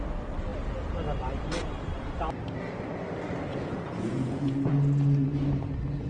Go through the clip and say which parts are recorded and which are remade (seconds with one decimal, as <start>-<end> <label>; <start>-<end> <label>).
0.0-3.5 recorded; 3.5-4.7 remade; 4.7-6.1 recorded